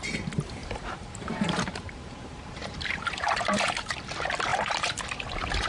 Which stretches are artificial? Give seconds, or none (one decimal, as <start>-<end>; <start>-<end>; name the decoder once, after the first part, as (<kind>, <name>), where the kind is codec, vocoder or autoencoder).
0.6-3.9 (vocoder, BigVGAN v2); 4.5-5.0